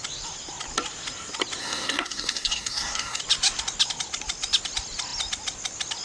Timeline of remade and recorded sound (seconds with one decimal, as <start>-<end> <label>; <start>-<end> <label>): 0.0-1.6 recorded; 1.6-3.2 remade; 3.2-6.0 recorded